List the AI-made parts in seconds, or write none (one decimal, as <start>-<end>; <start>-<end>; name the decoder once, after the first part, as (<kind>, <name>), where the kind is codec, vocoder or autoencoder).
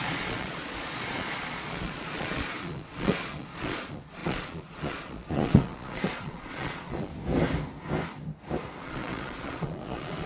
0.0-7.1 (vocoder, Vocos); 8.8-10.3